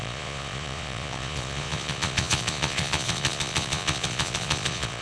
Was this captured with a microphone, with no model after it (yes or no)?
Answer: no